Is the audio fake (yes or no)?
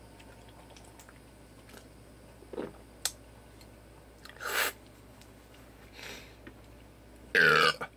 no